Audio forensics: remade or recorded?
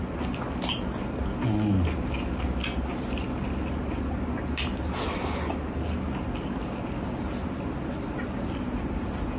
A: recorded